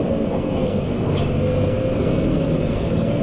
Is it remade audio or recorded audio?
remade